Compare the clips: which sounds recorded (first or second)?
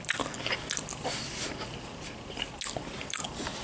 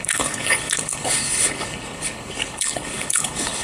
first